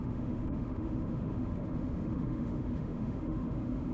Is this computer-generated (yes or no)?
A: yes